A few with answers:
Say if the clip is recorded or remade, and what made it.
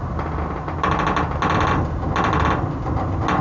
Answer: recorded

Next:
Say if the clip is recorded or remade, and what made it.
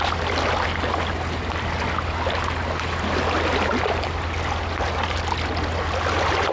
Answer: recorded